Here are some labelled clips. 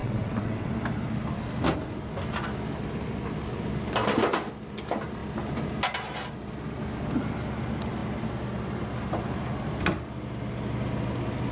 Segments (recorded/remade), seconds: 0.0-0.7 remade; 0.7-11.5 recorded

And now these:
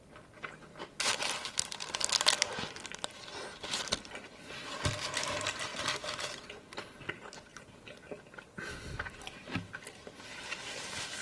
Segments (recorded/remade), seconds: 0.0-5.7 recorded; 5.7-6.5 remade; 6.5-7.5 recorded; 7.5-10.6 remade; 10.6-11.2 recorded

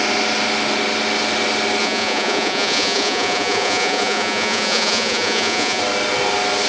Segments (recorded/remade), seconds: 0.0-1.8 recorded; 1.8-5.8 remade; 5.8-6.7 recorded

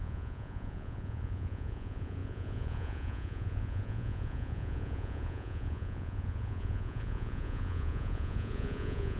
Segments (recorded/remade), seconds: 0.0-9.2 remade